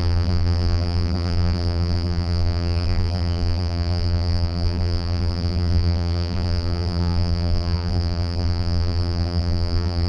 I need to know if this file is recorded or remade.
remade